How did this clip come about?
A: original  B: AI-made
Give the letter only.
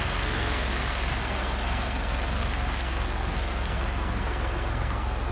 B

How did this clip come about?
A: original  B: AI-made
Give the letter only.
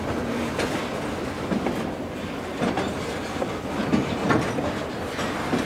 A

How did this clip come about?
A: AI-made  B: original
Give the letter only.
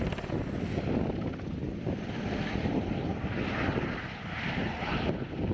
B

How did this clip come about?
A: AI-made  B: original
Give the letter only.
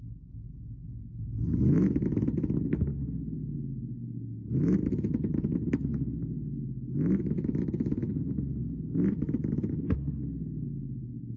B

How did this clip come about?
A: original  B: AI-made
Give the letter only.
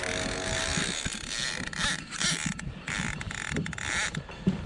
A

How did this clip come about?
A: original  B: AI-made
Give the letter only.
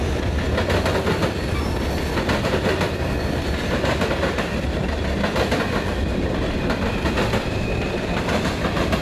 A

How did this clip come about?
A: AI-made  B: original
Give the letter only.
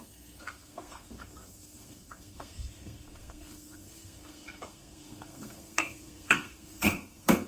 A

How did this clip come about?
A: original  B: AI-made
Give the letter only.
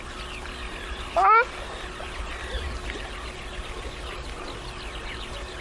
A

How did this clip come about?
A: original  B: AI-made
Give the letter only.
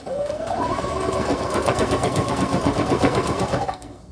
B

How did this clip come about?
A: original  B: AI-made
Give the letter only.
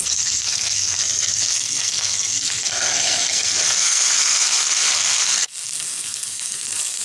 B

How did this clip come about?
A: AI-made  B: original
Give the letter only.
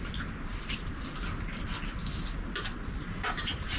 B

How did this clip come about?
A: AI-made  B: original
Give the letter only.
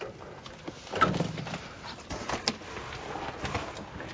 B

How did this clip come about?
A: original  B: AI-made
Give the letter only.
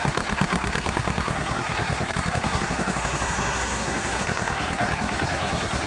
B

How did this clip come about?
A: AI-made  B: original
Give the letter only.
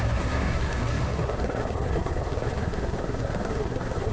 A